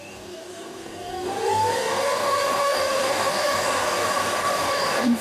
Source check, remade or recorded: remade